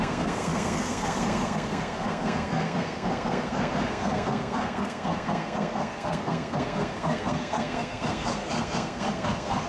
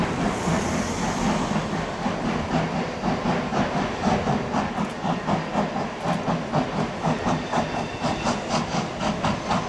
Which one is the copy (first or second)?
first